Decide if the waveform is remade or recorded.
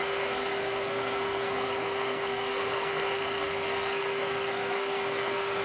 remade